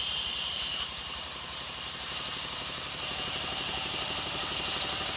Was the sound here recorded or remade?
remade